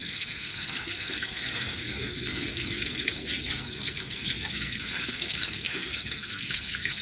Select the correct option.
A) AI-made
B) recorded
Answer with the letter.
A